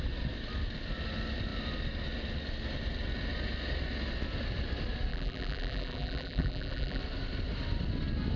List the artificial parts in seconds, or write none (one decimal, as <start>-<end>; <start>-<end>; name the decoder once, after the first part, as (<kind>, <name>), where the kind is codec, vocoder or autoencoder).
5.1-7.0 (vocoder, BigVGAN v2)